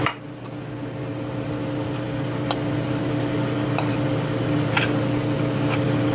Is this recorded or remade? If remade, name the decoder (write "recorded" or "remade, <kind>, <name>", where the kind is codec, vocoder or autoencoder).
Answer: recorded